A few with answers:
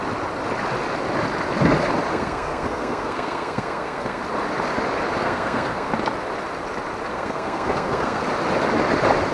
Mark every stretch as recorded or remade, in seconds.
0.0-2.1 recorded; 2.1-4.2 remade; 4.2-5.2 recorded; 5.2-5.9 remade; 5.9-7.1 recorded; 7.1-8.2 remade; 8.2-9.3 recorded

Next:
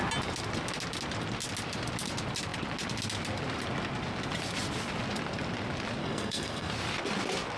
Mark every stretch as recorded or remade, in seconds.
0.0-6.0 recorded; 6.0-6.7 remade; 6.7-7.6 recorded

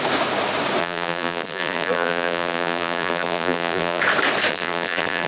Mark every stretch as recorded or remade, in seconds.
0.0-0.8 recorded; 0.8-4.0 remade; 4.0-4.5 recorded; 4.5-5.3 remade

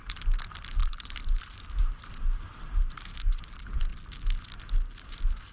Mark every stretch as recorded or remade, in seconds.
0.0-3.9 remade; 3.9-4.4 recorded; 4.4-5.5 remade

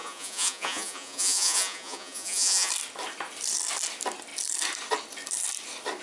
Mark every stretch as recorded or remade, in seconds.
0.0-2.7 remade; 2.7-6.0 recorded

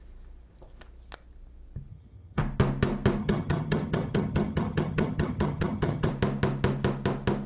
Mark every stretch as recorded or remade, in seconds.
0.0-1.9 recorded; 1.9-2.4 remade; 2.4-3.2 recorded; 3.2-6.1 remade; 6.1-7.5 recorded

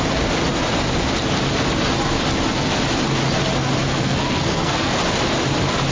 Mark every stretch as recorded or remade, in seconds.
0.0-3.9 recorded; 3.9-4.9 remade; 4.9-5.9 recorded

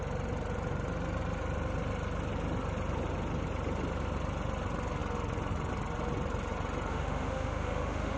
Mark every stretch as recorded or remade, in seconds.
0.0-6.9 recorded; 6.9-8.2 remade